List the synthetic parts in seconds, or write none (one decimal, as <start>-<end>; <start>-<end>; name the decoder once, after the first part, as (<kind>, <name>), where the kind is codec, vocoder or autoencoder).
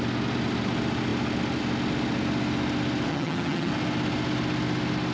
3.1-3.7 (vocoder, HiFi-GAN)